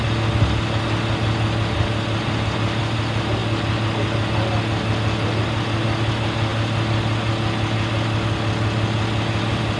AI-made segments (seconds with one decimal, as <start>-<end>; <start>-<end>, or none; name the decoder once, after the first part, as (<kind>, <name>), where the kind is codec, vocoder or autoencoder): none